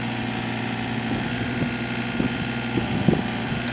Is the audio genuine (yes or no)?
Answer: yes